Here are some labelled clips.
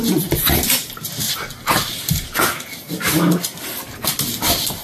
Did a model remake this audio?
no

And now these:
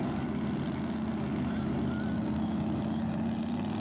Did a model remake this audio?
no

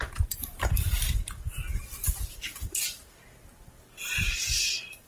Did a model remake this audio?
yes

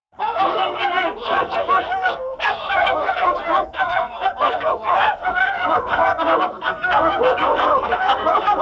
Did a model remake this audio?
yes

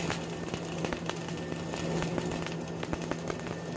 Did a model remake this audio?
no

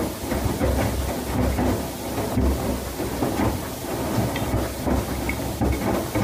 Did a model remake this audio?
no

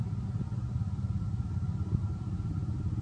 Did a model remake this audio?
no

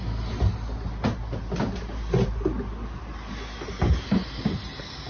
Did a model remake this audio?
no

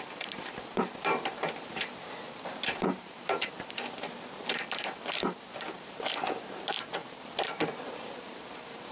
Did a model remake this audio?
yes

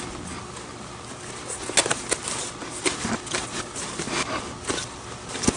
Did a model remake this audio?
no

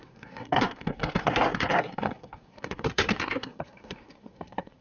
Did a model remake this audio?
yes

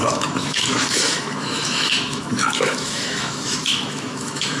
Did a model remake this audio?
yes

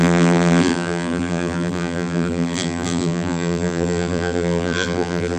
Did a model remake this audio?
yes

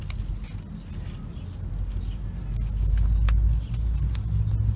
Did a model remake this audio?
no